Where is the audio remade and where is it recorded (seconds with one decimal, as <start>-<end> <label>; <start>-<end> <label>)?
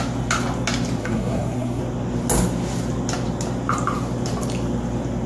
0.0-1.0 recorded; 1.0-1.8 remade; 1.8-5.3 recorded